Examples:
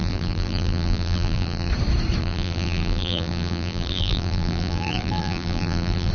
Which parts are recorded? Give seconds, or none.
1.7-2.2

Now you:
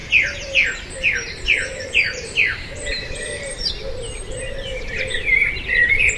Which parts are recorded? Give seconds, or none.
3.7-6.2